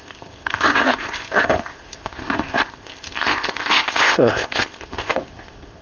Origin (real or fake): fake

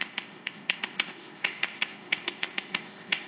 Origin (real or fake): fake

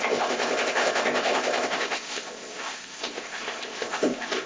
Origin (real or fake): fake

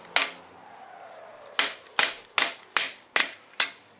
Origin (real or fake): real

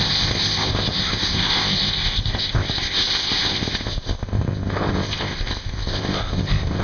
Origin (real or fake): fake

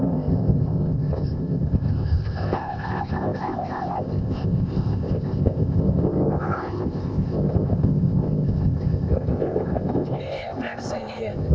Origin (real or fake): fake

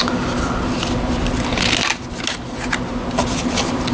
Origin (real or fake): real